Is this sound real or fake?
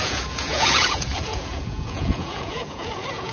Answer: fake